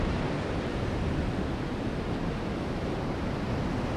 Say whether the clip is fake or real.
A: real